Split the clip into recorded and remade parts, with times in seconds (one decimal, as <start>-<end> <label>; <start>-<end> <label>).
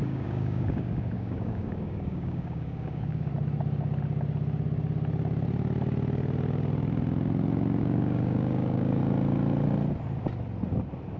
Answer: 0.0-3.3 remade; 3.3-7.8 recorded; 7.8-9.0 remade; 9.0-11.2 recorded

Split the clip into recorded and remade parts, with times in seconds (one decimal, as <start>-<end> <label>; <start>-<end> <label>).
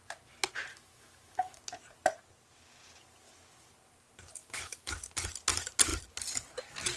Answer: 0.0-0.7 recorded; 0.7-1.6 remade; 1.6-4.4 recorded; 4.4-4.9 remade; 4.9-7.0 recorded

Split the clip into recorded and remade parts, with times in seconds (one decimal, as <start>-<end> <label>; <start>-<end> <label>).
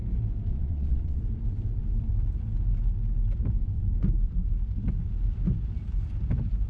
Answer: 0.0-0.5 recorded; 0.5-1.2 remade; 1.2-6.7 recorded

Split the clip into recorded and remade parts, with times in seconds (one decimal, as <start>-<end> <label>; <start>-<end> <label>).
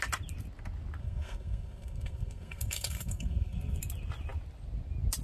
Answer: 0.0-1.0 recorded; 1.0-3.8 remade; 3.8-5.2 recorded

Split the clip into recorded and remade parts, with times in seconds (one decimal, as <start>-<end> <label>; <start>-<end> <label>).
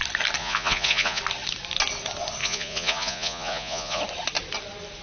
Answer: 0.0-0.4 recorded; 0.4-1.2 remade; 1.2-2.4 recorded; 2.4-4.0 remade; 4.0-5.0 recorded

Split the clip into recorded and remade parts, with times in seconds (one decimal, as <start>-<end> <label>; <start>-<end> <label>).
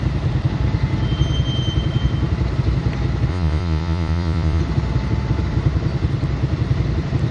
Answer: 0.0-3.3 recorded; 3.3-4.6 remade; 4.6-7.3 recorded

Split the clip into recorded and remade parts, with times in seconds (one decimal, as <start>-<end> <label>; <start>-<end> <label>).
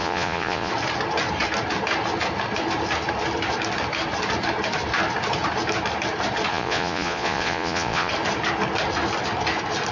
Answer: 0.0-0.7 remade; 0.7-6.5 recorded; 6.5-8.1 remade; 8.1-9.9 recorded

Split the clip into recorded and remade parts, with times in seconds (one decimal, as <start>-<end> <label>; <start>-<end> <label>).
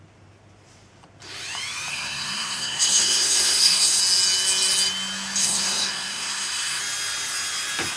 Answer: 0.0-1.9 recorded; 1.9-4.0 remade; 4.0-5.4 recorded; 5.4-6.8 remade; 6.8-8.0 recorded